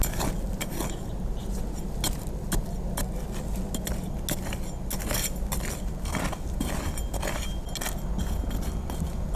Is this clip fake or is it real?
real